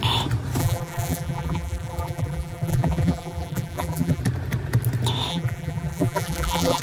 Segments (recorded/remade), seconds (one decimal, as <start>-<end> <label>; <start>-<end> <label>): 0.0-0.6 recorded; 0.6-4.2 remade; 4.2-5.3 recorded; 5.3-6.8 remade